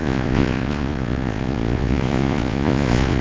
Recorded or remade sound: remade